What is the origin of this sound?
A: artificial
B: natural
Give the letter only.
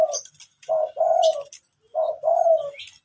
B